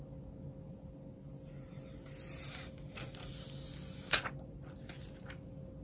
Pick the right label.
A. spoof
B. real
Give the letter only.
B